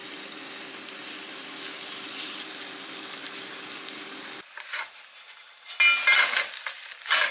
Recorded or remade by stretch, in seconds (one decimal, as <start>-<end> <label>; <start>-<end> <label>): 0.0-7.3 recorded